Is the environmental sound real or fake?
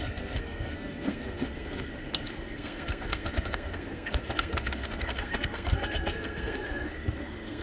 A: fake